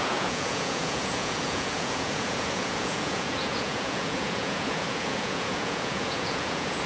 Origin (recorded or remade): remade